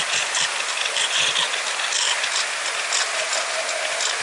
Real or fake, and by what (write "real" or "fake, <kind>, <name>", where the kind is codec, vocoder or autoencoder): real